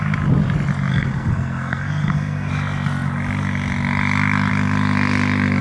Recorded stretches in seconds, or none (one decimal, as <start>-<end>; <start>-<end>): 0.0-0.9; 2.5-5.6